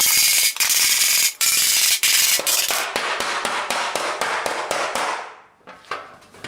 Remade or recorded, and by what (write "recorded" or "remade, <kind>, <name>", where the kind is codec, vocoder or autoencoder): remade, vocoder, BigVGAN v2